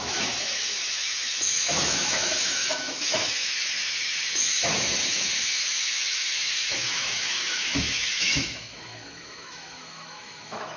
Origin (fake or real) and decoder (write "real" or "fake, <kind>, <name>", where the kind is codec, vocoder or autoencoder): fake, autoencoder, DAC-VAE